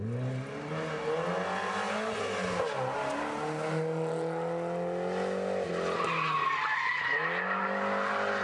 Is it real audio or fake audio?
real